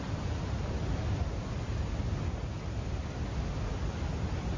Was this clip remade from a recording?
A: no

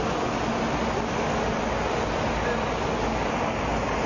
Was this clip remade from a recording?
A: no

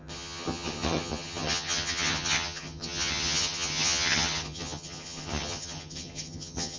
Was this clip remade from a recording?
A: yes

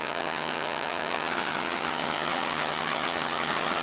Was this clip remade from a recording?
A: yes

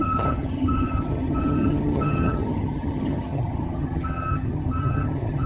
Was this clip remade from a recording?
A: yes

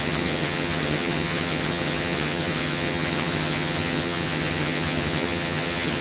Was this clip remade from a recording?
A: yes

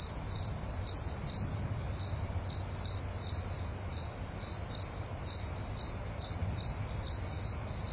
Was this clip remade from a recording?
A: no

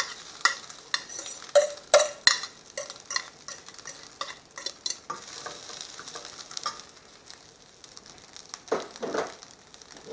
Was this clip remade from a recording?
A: no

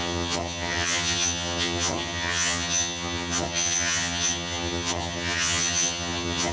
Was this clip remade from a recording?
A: yes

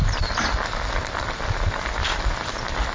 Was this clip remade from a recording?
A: no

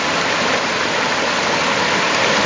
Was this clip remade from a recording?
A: no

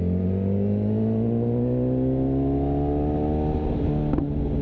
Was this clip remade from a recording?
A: no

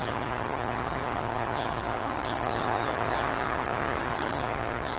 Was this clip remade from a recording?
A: yes